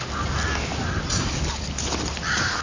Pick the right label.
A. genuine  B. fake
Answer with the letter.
A